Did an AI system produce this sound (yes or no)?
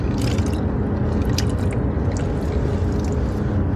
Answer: no